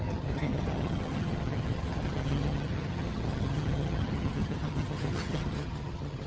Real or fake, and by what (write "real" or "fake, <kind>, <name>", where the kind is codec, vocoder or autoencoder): fake, vocoder, HiFi-GAN